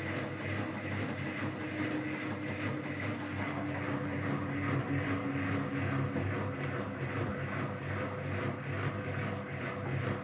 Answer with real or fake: real